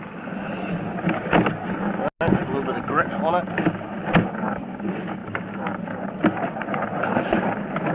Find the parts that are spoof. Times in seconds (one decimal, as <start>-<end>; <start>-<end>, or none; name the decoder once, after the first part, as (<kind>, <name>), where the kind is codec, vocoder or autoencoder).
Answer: 5.2-6.2 (vocoder, BigVGAN v2)